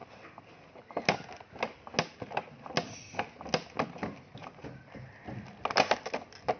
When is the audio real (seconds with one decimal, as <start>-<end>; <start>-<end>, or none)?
0.0-6.6